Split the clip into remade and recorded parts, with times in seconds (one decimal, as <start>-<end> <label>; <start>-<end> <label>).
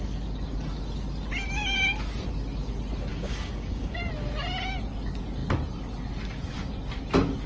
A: 0.0-3.1 recorded; 3.1-4.1 remade; 4.1-7.5 recorded